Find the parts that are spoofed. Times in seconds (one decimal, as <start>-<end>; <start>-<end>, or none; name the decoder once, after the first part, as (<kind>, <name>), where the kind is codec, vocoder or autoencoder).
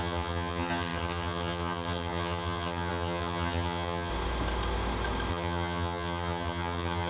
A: 0.0-4.1 (vocoder, HiFi-GAN); 5.3-7.1